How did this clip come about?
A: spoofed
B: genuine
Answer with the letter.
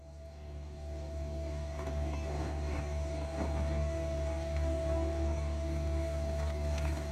A